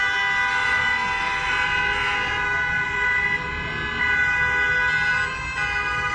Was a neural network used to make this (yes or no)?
no